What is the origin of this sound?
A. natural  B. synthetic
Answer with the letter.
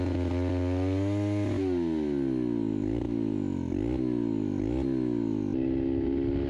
A